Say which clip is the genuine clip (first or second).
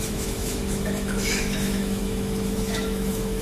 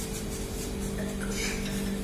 second